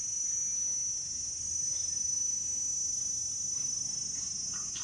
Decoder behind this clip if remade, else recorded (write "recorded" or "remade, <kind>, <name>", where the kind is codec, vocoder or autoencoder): recorded